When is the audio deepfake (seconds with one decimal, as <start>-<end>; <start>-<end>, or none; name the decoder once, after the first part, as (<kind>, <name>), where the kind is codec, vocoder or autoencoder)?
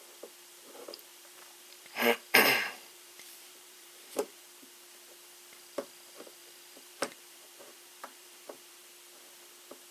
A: 1.1-4.4 (vocoder, BigVGAN v2); 6.4-8.8